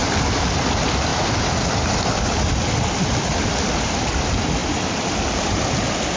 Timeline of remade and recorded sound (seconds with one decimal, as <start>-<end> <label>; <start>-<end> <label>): 0.0-6.2 recorded